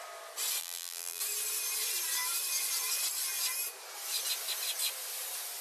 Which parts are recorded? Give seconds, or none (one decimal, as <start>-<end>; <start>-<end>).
0.0-0.6; 1.2-5.6